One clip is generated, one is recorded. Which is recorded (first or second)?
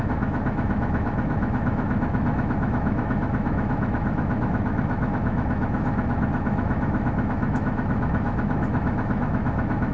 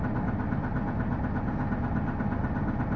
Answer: second